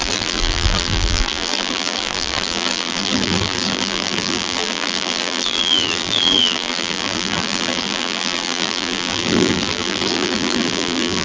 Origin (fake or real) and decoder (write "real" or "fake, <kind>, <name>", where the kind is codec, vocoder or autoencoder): fake, vocoder, BigVGAN v2